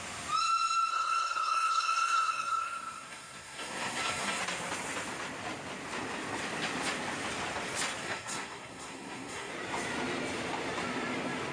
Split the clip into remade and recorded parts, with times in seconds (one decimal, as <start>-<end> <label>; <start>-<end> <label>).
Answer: 0.0-0.9 recorded; 0.9-4.4 remade; 4.4-8.0 recorded; 8.0-9.5 remade; 9.5-11.5 recorded